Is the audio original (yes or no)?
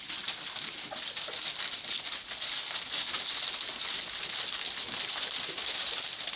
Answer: yes